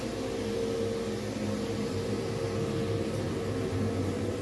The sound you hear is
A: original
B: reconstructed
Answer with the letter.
A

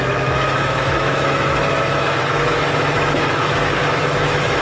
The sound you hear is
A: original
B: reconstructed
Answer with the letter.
B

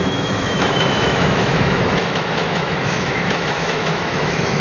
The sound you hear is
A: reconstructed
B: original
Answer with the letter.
A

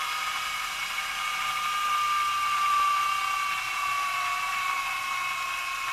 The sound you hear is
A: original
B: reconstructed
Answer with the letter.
A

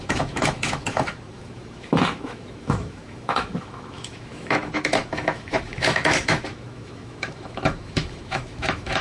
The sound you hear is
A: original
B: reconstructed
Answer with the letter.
B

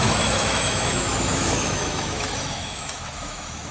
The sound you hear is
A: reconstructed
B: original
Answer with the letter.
A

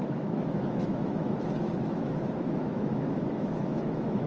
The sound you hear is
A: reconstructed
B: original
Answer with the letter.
A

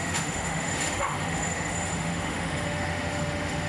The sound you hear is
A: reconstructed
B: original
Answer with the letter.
A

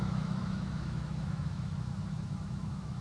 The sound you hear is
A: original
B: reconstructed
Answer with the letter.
B